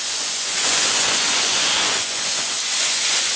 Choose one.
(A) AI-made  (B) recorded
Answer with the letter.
A